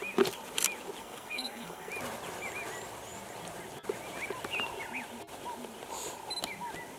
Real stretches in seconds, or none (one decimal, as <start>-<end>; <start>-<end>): 0.0-1.0; 1.9-7.0